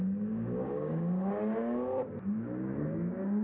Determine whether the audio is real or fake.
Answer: fake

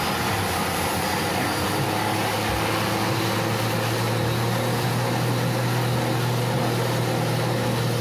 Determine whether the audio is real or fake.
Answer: real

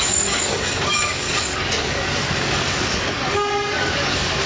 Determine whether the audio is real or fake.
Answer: fake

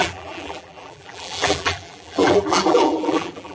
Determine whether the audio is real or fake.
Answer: fake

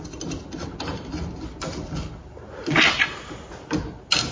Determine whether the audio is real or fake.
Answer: real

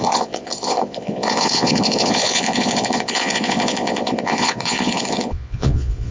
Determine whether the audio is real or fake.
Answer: fake